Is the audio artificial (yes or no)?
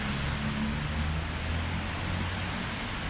no